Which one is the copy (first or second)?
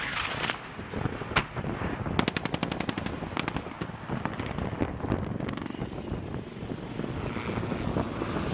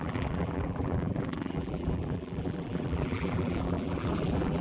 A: second